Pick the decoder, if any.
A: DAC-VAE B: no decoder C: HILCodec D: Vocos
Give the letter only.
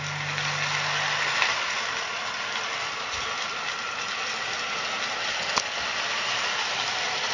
B